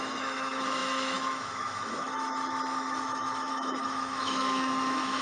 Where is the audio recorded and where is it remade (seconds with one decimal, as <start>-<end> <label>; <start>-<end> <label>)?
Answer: 0.0-5.2 remade